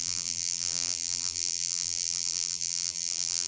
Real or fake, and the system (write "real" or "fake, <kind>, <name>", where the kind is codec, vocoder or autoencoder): fake, vocoder, BigVGAN v2